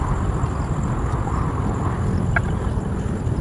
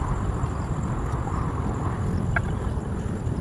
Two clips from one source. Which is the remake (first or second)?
second